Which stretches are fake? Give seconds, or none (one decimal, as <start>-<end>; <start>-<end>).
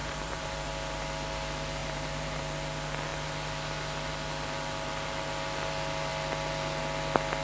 0.0-0.7; 1.8-2.4